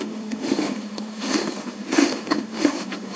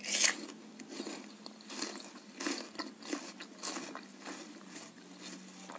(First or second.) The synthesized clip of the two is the first